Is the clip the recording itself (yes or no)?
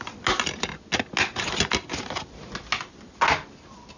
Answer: yes